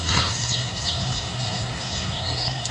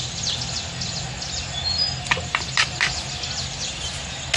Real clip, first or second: second